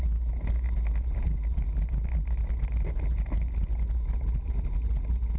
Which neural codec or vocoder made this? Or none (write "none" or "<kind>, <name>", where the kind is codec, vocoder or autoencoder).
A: none